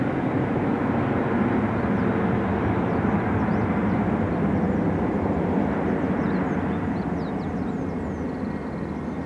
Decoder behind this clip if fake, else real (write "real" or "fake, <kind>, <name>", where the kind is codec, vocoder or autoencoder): real